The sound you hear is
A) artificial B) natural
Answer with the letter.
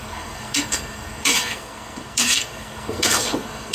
A